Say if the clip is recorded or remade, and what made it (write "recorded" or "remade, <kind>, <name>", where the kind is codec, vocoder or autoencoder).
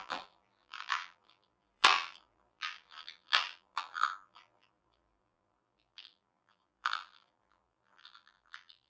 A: remade, vocoder, BigVGAN v2